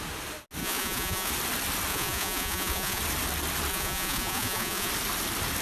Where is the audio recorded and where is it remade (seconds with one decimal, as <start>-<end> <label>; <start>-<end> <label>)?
0.0-0.6 recorded; 0.6-1.3 remade; 1.3-1.9 recorded; 1.9-3.0 remade; 3.0-3.7 recorded; 3.7-4.9 remade; 4.9-5.6 recorded